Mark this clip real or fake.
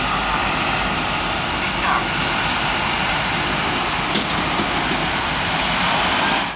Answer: real